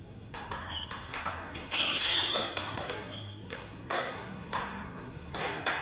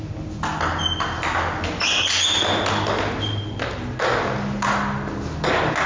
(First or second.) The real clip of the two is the second